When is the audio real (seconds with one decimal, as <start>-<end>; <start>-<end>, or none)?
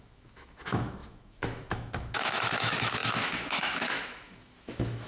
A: none